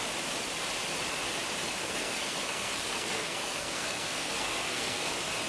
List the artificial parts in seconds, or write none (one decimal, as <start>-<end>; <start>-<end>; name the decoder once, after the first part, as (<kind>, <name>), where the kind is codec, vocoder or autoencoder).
1.8-5.1 (codec, SNAC)